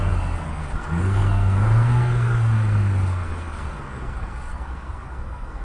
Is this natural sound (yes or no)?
no